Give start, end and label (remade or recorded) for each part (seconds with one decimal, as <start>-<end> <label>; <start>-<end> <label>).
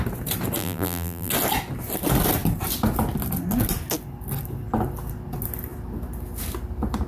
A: 0.0-0.6 recorded; 0.6-1.3 remade; 1.3-7.1 recorded